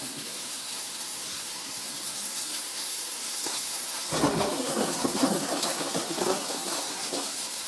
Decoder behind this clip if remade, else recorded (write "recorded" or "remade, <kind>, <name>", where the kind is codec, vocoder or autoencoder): remade, codec, SNAC